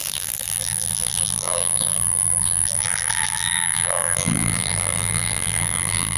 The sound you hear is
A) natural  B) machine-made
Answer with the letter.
B